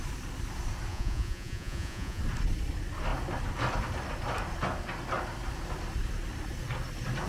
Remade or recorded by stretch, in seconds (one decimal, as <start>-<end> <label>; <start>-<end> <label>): 0.0-0.9 recorded; 0.9-2.2 remade; 2.2-7.3 recorded